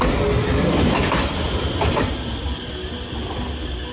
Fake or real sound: real